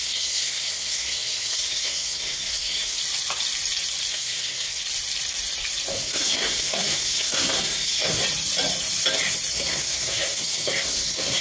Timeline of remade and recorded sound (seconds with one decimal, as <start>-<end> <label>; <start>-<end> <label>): 0.0-3.0 remade; 3.0-4.1 recorded; 4.1-4.8 remade; 4.8-5.9 recorded; 5.9-8.2 remade; 8.2-9.5 recorded; 9.5-11.4 remade